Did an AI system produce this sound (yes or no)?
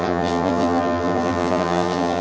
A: yes